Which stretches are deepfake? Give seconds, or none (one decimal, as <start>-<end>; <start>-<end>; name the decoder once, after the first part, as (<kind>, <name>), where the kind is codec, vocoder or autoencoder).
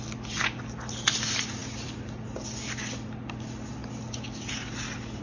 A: none